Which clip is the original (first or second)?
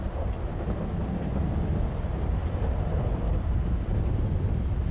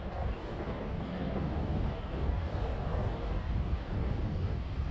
first